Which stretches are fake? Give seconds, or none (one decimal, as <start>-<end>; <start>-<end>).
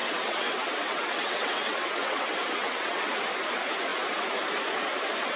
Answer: 0.0-3.2